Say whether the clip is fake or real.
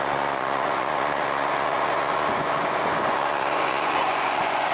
fake